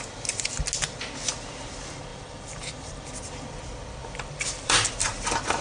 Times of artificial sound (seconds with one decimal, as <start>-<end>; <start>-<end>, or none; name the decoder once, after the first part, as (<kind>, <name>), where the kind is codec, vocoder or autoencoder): 2.1-3.1 (vocoder, BigVGAN v2); 4.0-4.9

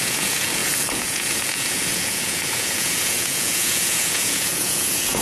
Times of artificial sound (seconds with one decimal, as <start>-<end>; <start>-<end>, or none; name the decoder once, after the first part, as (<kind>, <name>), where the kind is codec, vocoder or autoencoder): 0.0-5.2 (vocoder, Vocos)

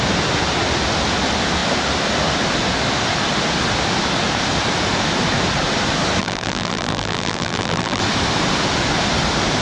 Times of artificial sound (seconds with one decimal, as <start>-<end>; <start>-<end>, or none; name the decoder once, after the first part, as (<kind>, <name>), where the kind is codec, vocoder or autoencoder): 6.2-8.0 (vocoder, BigVGAN v2)